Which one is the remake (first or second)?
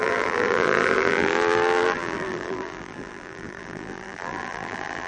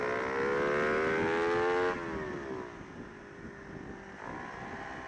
first